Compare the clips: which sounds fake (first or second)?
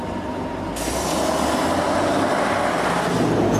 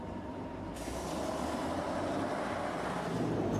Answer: second